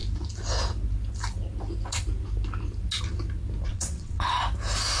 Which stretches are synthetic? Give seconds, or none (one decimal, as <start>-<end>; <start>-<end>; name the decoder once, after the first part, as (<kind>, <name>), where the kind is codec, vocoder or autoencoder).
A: 3.7-4.3 (vocoder, WaveNeXt)